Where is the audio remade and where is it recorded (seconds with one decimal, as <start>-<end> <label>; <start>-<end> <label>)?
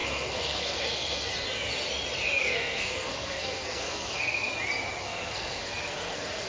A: 0.0-1.3 remade; 1.3-2.4 recorded; 2.4-4.5 remade; 4.5-5.0 recorded; 5.0-6.5 remade